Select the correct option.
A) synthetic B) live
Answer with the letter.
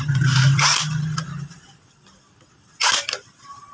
B